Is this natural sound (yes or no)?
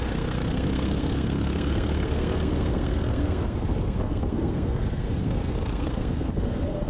no